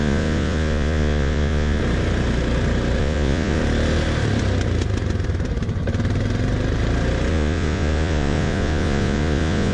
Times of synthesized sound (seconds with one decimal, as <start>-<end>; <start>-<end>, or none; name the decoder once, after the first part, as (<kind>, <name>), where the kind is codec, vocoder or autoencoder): 0.0-1.8 (vocoder, Vocos); 3.0-3.6; 7.3-9.7